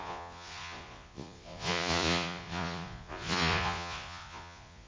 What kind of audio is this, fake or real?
fake